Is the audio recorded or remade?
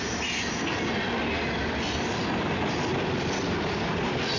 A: recorded